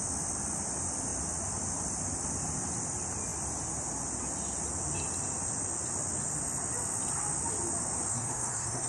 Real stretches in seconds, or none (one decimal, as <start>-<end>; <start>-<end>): 0.0-8.1

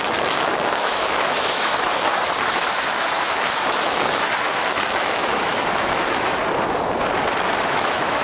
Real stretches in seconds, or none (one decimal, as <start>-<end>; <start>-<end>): 6.4-7.5

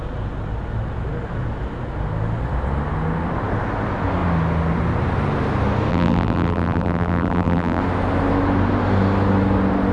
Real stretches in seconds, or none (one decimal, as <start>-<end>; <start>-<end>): 0.0-5.9; 7.8-9.9

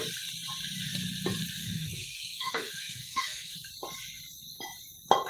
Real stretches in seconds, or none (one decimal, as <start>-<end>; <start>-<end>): 0.0-1.6; 3.7-5.3

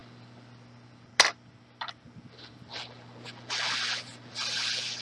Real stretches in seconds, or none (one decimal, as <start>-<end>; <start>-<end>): 0.0-5.0

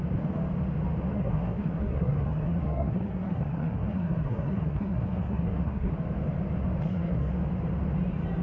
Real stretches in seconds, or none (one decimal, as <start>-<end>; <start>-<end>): 0.0-1.1; 5.9-6.8; 7.3-8.4

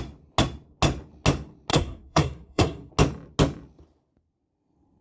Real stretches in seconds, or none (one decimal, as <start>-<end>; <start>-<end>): 0.0-1.7; 2.9-5.0

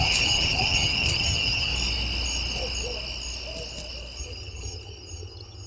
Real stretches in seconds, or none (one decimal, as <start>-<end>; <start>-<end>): 1.7-4.2